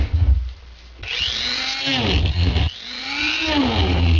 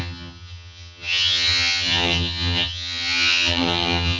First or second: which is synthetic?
second